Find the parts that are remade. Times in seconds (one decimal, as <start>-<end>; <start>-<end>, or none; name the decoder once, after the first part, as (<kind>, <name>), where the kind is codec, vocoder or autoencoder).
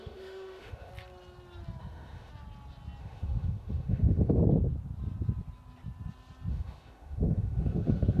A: 0.0-0.9 (autoencoder, DAC-VAE); 1.8-2.3; 3.0-4.4; 6.5-8.2